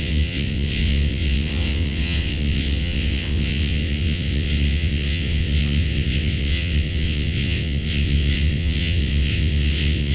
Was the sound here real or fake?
fake